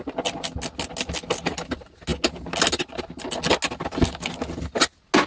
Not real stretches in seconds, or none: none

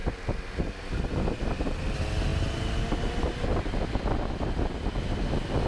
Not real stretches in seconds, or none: none